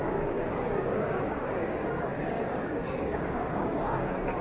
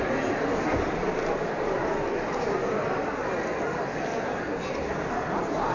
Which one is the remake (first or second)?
first